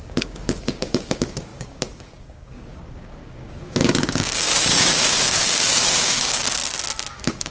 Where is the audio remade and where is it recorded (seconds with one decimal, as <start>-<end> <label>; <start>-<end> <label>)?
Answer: 0.0-6.6 remade; 6.6-7.1 recorded; 7.1-7.5 remade